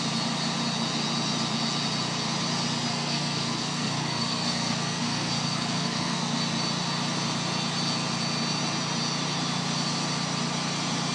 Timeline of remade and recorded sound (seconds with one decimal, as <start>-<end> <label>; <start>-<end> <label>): 0.0-2.9 recorded; 2.9-6.4 remade; 6.4-11.1 recorded